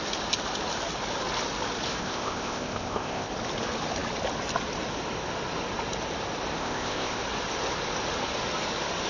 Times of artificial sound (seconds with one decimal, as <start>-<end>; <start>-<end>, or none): 2.0-3.3; 6.6-7.2